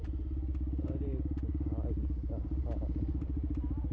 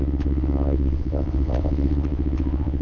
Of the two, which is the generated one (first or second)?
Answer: second